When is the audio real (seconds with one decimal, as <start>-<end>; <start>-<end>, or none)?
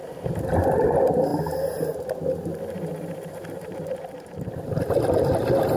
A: 0.6-5.8